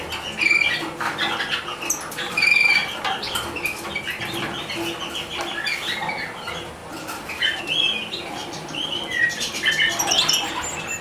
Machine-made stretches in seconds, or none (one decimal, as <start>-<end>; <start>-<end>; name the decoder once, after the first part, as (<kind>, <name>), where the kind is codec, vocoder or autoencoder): 8.4-9.7 (vocoder, BigVGAN v2)